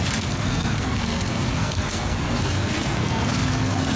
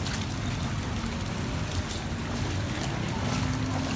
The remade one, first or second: first